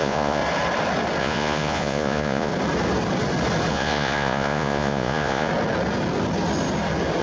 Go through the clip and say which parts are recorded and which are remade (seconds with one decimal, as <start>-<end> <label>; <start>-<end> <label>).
0.0-0.4 remade; 0.4-1.2 recorded; 1.2-2.5 remade; 2.5-3.7 recorded; 3.7-5.5 remade; 5.5-7.2 recorded